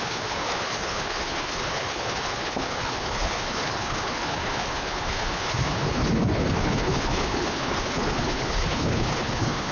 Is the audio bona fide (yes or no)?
no